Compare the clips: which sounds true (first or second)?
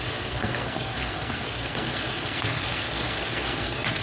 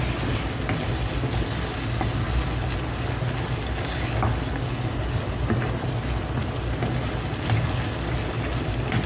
second